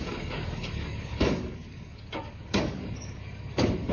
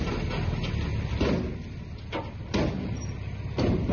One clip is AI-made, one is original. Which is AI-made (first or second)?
first